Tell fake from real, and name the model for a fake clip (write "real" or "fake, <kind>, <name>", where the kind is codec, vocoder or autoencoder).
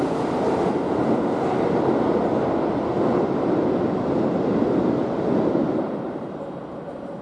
real